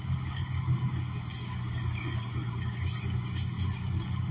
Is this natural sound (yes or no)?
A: no